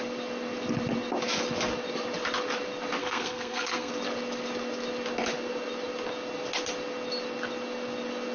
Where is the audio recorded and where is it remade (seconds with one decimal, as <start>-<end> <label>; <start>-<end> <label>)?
0.0-3.0 recorded; 3.0-3.9 remade; 3.9-8.3 recorded